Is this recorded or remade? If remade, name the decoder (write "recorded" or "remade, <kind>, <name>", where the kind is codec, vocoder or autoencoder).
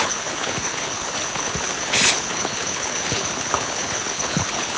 remade, codec, HILCodec